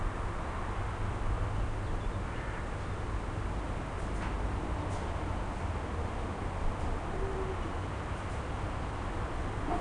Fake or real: real